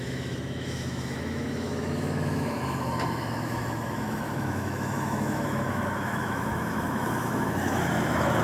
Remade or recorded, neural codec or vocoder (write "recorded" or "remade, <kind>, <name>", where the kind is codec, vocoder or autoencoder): remade, autoencoder, DAC-VAE